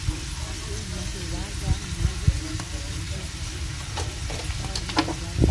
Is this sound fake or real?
real